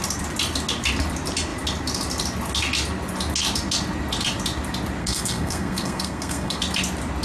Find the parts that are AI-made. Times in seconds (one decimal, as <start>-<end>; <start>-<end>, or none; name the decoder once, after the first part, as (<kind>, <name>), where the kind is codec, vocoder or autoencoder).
5.0-6.6 (codec, SNAC)